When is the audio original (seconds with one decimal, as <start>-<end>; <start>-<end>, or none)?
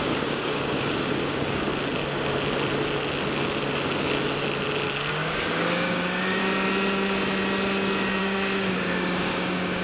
1.7-5.1; 6.4-8.2